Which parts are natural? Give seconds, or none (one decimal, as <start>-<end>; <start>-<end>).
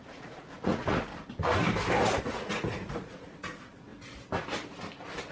1.1-2.2; 3.9-5.3